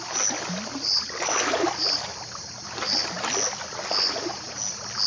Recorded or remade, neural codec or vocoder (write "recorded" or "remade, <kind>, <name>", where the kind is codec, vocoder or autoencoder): recorded